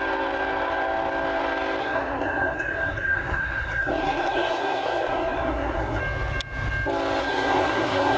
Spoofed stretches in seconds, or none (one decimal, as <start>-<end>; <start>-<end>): 1.8-6.0; 7.2-8.2